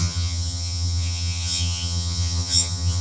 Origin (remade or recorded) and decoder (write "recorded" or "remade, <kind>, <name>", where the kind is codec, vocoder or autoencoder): remade, vocoder, HiFi-GAN